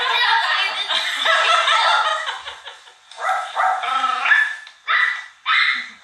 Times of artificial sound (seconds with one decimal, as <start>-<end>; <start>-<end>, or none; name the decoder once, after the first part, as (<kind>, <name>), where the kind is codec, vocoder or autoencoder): 0.0-2.1 (vocoder, BigVGAN v2)